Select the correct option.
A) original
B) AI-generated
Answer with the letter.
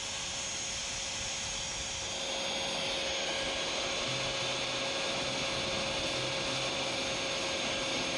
A